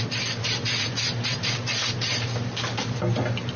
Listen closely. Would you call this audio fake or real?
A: real